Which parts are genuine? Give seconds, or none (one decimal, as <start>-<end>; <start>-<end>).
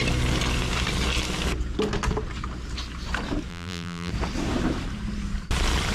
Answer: 0.0-3.5; 4.1-5.9